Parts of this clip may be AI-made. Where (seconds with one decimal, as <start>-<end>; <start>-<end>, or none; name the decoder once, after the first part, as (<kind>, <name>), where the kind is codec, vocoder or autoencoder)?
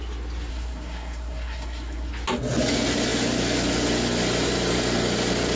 0.5-2.1 (codec, SNAC)